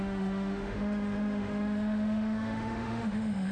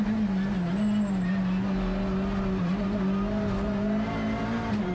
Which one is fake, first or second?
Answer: first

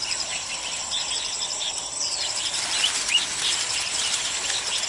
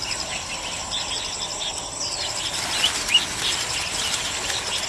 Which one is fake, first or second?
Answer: first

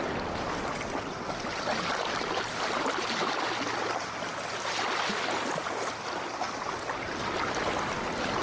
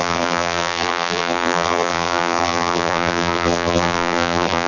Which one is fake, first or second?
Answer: second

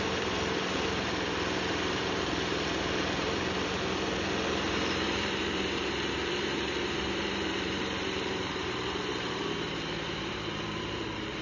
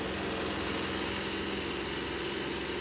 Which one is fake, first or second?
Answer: first